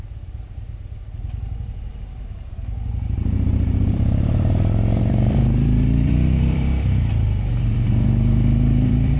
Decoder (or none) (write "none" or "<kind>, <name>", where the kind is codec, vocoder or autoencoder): vocoder, BigVGAN v2